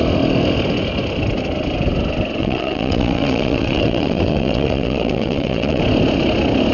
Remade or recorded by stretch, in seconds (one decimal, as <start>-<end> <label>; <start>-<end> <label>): 0.0-2.4 recorded; 2.4-5.8 remade; 5.8-6.7 recorded